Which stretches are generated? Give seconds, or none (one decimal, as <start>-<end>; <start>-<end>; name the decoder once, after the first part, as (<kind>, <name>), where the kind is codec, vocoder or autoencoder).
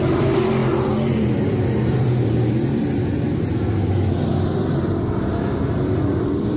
0.0-0.6 (vocoder, BigVGAN v2); 1.9-6.6